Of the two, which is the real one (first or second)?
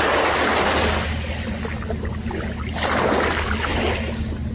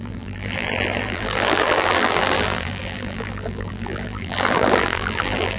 first